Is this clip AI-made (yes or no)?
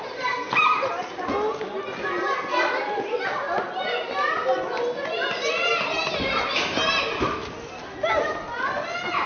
no